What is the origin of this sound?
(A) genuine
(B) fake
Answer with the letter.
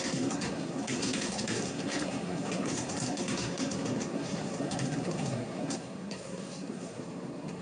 B